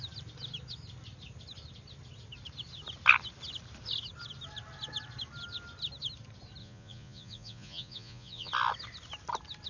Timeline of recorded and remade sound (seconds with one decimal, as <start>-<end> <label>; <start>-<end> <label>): 0.0-6.6 recorded; 6.6-8.5 remade; 8.5-9.7 recorded